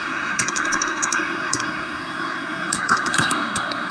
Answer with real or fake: fake